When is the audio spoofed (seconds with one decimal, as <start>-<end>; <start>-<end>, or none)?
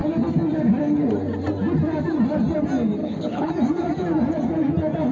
3.0-3.5